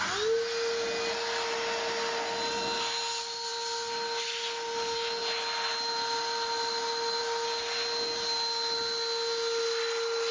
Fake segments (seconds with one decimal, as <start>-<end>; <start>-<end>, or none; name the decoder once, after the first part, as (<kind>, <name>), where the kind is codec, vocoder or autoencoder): none